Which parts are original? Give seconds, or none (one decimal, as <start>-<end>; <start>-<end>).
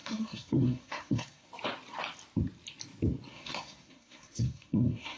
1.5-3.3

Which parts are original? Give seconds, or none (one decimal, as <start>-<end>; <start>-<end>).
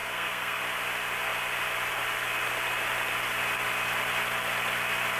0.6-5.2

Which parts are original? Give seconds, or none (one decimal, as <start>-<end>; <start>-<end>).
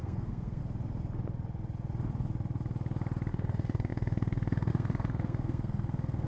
0.6-3.3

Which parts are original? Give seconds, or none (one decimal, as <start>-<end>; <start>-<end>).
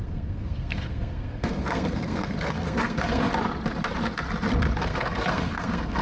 3.3-4.8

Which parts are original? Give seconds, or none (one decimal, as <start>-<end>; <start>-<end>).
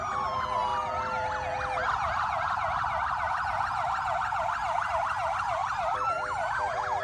0.0-7.0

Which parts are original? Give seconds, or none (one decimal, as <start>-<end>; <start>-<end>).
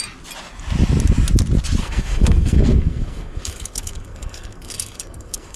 0.0-1.8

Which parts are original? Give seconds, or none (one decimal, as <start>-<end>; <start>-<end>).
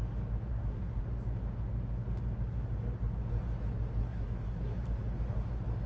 0.0-0.5; 1.0-4.0; 4.8-5.9